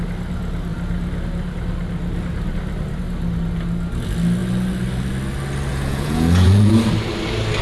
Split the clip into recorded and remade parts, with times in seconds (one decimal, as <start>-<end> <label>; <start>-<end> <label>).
0.0-5.7 recorded; 5.7-6.7 remade; 6.7-7.6 recorded